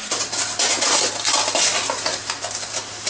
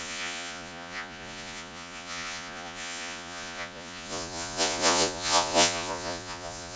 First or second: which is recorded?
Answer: first